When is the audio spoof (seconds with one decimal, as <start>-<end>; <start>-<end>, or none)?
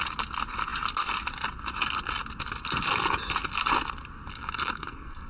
4.3-5.3